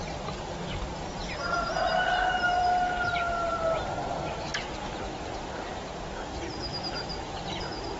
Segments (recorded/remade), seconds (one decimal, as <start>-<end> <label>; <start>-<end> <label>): 0.0-2.7 remade; 2.7-4.1 recorded; 4.1-8.0 remade

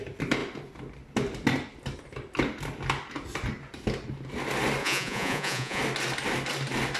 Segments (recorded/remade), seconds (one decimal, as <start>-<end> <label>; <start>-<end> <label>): 0.0-4.8 recorded; 4.8-5.8 remade; 5.8-7.0 recorded

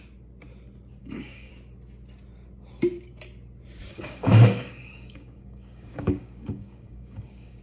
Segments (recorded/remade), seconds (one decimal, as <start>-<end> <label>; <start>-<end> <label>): 0.0-1.0 recorded; 1.0-1.5 remade; 1.5-3.9 recorded; 3.9-7.6 remade

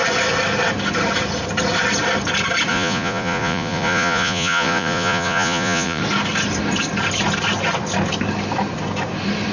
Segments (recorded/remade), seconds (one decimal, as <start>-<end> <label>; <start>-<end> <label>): 0.0-2.7 recorded; 2.7-6.0 remade; 6.0-9.5 recorded

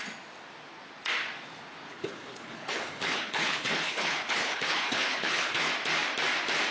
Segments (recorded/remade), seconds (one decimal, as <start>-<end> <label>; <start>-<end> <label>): 0.0-1.9 recorded; 1.9-5.6 remade; 5.6-6.7 recorded

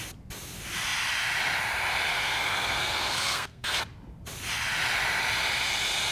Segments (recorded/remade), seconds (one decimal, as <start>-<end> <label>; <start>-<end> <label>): 0.0-2.1 recorded; 2.1-3.8 remade; 3.8-6.1 recorded

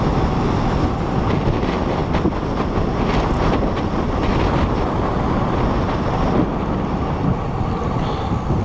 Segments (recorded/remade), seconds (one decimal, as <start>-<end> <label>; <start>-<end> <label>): 0.0-8.6 recorded

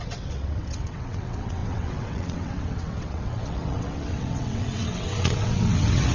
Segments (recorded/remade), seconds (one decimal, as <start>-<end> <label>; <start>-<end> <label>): 0.0-6.1 remade